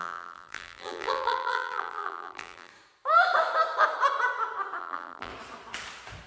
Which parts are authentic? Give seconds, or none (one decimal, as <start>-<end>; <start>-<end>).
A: 2.7-4.8; 5.3-6.3